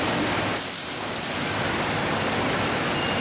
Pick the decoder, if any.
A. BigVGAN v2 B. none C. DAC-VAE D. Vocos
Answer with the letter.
B